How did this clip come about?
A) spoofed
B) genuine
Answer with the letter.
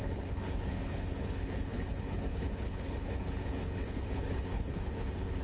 A